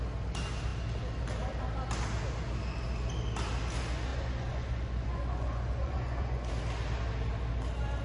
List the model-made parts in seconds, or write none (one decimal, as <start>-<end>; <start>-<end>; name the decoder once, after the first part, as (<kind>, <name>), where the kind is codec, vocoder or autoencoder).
4.1-6.5 (vocoder, Vocos)